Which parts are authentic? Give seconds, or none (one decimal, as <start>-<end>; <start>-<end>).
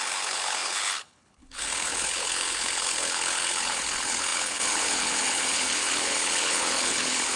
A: none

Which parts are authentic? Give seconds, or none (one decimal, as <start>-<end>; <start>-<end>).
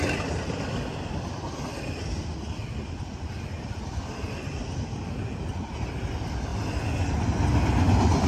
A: 0.0-1.7; 5.1-8.3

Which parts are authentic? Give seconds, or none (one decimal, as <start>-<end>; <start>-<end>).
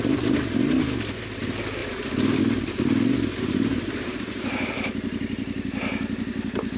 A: 0.0-1.8; 2.4-3.7; 5.7-6.8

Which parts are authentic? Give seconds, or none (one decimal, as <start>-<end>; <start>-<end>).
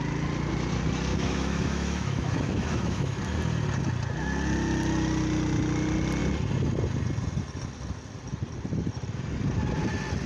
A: 0.0-1.1; 3.2-10.3